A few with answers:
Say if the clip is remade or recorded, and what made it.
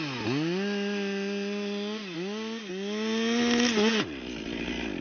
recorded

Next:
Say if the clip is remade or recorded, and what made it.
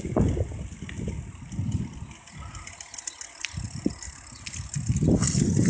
recorded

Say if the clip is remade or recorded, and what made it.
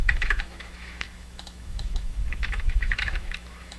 remade, autoencoder, DAC-VAE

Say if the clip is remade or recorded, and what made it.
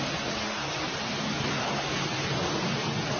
recorded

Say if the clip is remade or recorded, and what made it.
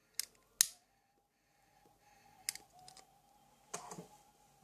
recorded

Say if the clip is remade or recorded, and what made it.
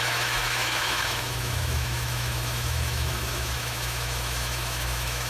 remade, autoencoder, DAC-VAE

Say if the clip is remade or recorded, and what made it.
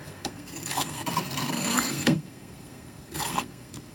remade, codec, SNAC